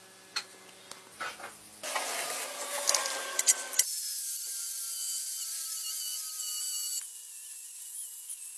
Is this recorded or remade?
recorded